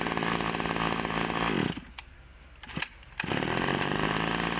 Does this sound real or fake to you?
real